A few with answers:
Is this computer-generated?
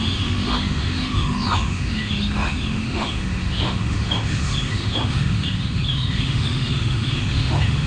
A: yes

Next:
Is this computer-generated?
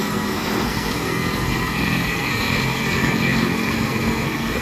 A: yes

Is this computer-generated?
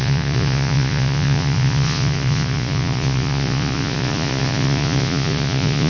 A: yes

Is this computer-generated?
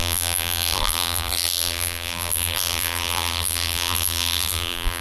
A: yes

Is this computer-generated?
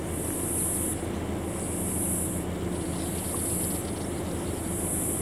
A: no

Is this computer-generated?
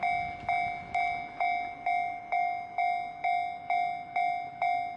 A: no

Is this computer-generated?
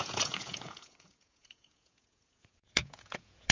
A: yes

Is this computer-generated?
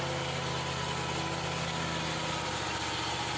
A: no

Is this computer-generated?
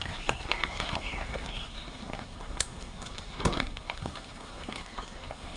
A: yes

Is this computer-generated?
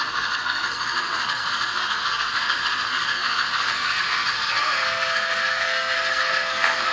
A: yes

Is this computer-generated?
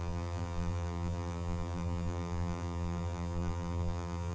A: yes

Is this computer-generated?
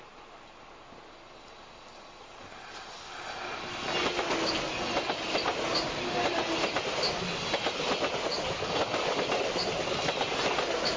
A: no